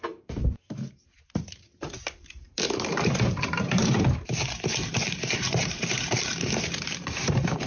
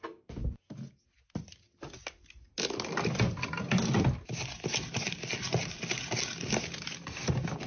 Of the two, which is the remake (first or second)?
first